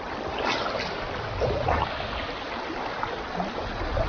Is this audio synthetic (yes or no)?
no